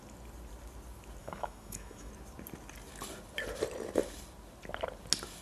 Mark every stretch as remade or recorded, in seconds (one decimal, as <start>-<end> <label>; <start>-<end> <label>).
0.0-1.2 recorded; 1.2-2.1 remade; 2.1-5.4 recorded